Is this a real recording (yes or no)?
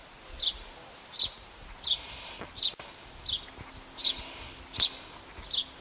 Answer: yes